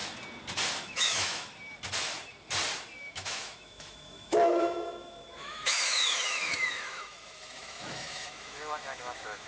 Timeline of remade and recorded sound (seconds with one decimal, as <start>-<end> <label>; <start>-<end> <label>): 0.0-0.8 recorded; 0.8-1.5 remade; 1.5-3.0 recorded; 3.0-9.5 remade